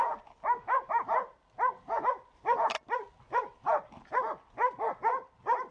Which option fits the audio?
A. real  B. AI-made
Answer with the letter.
A